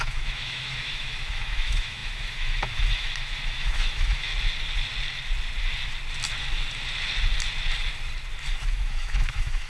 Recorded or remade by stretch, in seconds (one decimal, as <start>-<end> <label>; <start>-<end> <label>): 0.0-4.3 remade; 4.3-8.7 recorded; 8.7-9.7 remade